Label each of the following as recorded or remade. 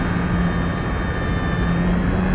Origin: recorded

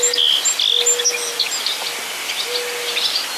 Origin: recorded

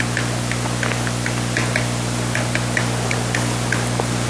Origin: recorded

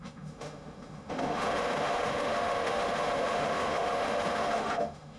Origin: remade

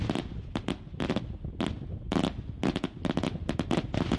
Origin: recorded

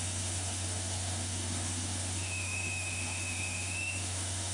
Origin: remade